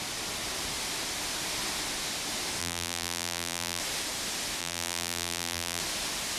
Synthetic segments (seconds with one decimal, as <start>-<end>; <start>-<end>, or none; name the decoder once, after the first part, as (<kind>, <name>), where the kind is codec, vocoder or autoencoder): 2.6-3.8 (vocoder, BigVGAN v2); 4.6-5.8